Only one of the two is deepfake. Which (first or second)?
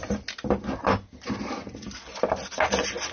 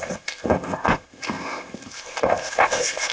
second